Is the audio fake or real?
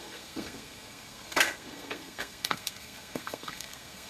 fake